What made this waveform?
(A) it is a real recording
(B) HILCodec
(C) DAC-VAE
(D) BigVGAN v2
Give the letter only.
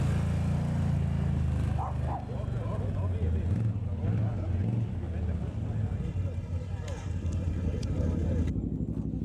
A